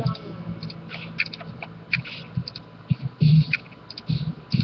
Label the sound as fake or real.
real